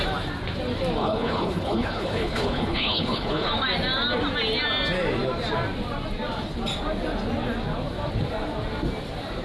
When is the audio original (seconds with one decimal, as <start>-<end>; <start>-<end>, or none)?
0.0-1.0; 3.5-9.4